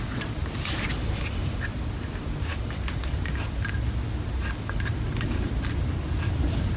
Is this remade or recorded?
recorded